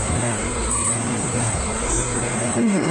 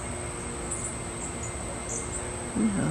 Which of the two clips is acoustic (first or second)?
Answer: second